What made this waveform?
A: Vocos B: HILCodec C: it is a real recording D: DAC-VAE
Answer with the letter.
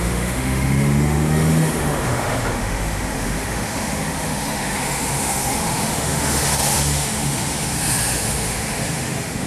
D